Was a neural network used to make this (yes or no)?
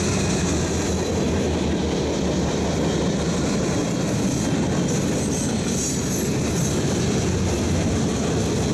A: no